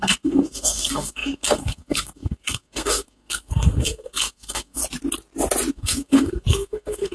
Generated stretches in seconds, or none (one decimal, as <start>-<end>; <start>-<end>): 0.0-4.8; 5.7-7.1